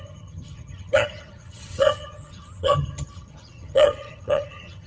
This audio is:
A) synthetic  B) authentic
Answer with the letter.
A